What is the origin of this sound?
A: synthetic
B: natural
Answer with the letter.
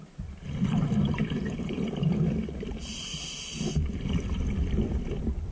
A